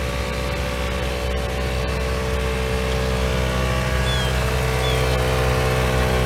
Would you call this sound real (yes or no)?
yes